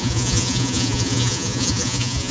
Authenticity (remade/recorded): remade